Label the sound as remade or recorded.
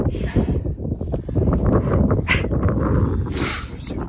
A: recorded